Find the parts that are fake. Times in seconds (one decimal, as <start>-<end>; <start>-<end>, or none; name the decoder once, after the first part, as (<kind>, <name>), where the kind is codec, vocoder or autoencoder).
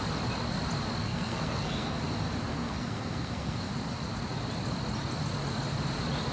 1.0-2.0 (codec, SNAC); 2.5-3.7